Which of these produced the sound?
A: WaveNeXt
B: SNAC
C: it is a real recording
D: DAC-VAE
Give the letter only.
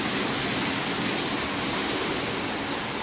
C